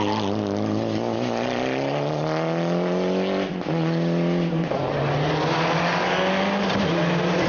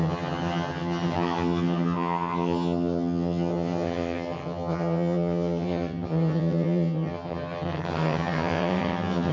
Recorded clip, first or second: first